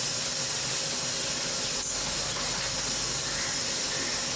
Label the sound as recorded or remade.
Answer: recorded